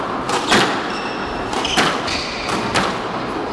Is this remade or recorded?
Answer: recorded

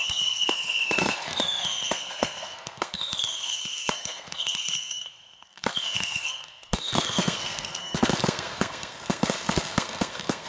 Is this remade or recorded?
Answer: remade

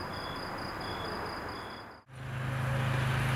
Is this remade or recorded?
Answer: recorded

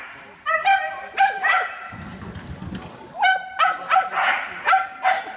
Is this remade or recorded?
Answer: recorded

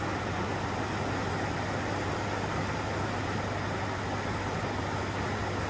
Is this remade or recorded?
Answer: recorded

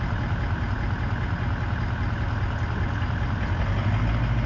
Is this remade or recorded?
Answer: recorded